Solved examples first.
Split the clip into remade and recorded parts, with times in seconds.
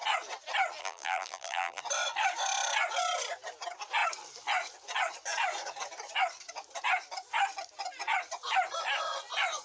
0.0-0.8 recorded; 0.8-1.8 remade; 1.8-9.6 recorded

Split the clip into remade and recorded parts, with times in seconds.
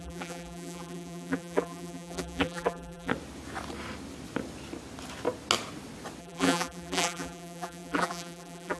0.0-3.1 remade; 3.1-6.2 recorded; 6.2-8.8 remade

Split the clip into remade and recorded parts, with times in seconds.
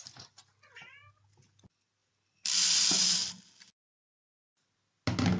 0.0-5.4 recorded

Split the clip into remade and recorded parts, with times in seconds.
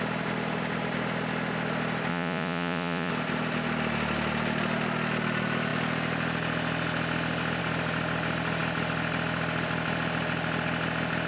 0.0-2.1 recorded; 2.1-3.1 remade; 3.1-11.3 recorded